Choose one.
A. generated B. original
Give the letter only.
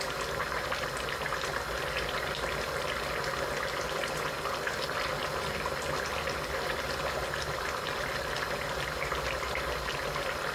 B